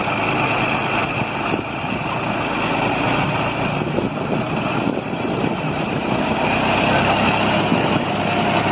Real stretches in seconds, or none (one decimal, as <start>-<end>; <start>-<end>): 0.0-8.7

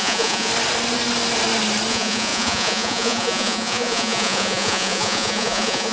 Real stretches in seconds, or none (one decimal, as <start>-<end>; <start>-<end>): 0.5-1.9

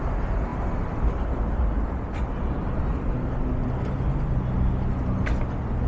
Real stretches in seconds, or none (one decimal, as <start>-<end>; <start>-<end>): 0.0-5.9